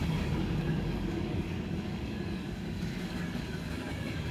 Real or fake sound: fake